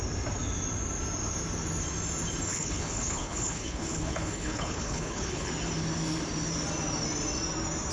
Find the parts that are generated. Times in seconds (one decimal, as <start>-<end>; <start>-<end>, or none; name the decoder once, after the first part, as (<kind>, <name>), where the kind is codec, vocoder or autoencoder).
2.5-5.5 (codec, HILCodec)